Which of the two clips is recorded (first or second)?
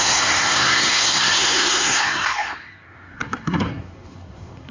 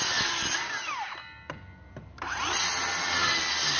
second